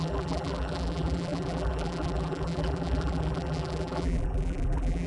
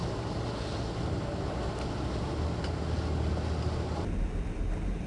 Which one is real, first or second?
second